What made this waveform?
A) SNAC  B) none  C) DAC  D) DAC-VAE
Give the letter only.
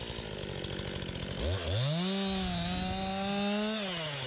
B